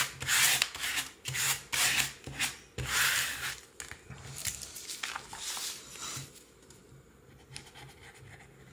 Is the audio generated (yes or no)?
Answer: no